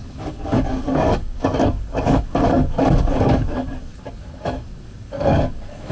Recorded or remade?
remade